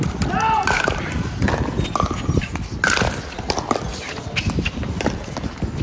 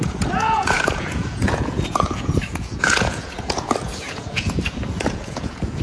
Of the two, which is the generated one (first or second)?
second